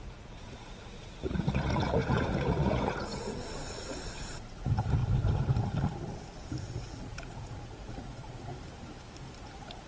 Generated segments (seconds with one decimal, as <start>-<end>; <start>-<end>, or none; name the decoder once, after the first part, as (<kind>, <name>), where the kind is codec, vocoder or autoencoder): 0.0-5.0 (vocoder, Vocos); 6.6-8.5